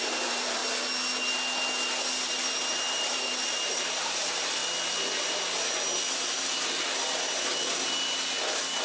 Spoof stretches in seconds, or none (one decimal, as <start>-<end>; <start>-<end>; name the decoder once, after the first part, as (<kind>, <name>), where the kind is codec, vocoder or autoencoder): 0.0-0.6 (vocoder, BigVGAN v2); 2.9-4.6